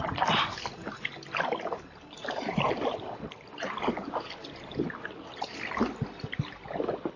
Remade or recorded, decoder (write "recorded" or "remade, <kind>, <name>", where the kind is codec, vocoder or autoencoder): recorded